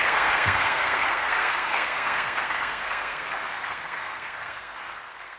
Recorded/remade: remade